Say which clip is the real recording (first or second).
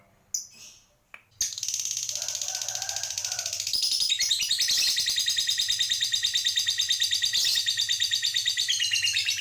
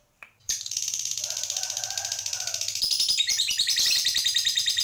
first